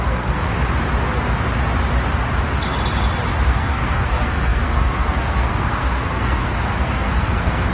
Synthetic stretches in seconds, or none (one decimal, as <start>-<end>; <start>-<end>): 0.0-0.5; 3.5-7.7